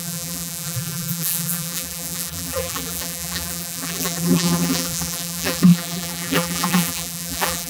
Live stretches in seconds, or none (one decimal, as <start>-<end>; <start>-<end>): none